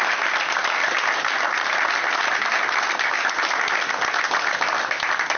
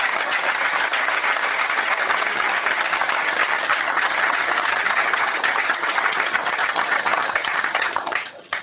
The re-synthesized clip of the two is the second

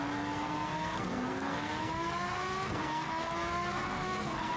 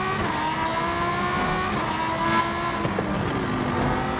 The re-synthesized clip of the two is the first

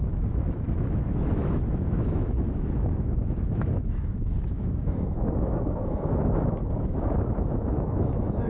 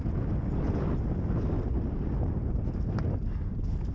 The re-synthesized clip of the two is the first